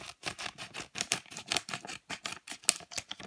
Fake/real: real